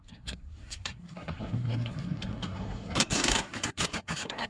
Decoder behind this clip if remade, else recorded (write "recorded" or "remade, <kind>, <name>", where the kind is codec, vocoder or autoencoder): remade, codec, SNAC